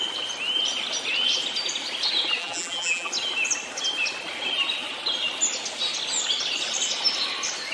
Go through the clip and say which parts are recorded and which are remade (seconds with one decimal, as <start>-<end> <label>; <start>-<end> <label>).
0.0-2.4 recorded; 2.4-3.1 remade; 3.1-7.7 recorded